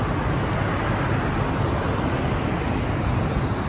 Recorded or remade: recorded